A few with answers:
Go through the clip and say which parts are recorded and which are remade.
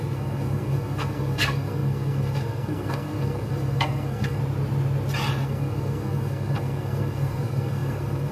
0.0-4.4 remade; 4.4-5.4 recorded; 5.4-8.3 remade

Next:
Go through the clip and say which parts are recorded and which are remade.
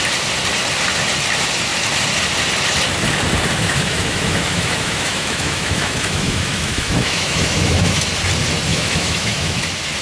0.0-3.6 recorded; 3.6-8.0 remade; 8.0-8.7 recorded; 8.7-9.6 remade; 9.6-10.0 recorded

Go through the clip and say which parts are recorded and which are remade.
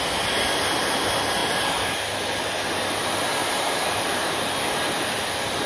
0.0-1.4 recorded; 1.4-1.9 remade; 1.9-3.4 recorded; 3.4-4.3 remade; 4.3-5.7 recorded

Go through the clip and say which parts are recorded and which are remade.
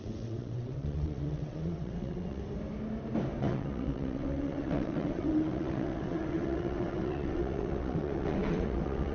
0.0-2.4 remade; 2.4-3.4 recorded; 3.4-9.1 remade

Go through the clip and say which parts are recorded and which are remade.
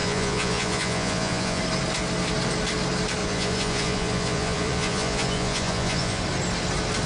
0.0-1.6 remade; 1.6-3.2 recorded; 3.2-6.2 remade; 6.2-7.1 recorded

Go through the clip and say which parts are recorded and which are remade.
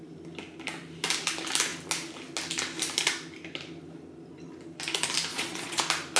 0.0-5.3 recorded; 5.3-5.8 remade; 5.8-6.2 recorded